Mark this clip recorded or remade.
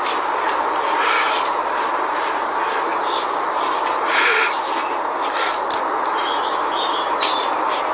recorded